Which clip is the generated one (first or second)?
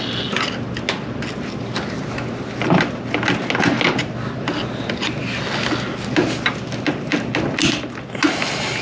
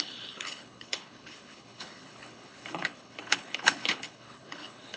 second